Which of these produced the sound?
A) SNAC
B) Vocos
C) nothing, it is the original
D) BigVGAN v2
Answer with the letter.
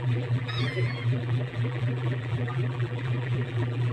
D